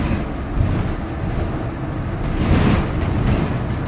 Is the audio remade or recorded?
recorded